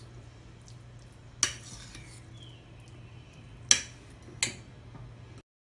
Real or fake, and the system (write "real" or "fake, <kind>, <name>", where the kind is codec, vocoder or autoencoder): real